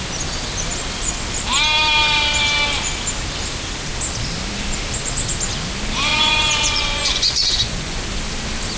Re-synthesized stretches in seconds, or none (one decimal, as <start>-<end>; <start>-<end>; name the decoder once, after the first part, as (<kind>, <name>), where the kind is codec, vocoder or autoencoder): 6.1-8.0 (vocoder, Vocos)